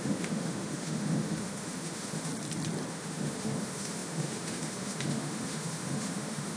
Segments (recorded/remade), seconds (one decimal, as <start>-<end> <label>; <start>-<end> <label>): 0.0-2.3 remade; 2.3-2.9 recorded; 2.9-6.6 remade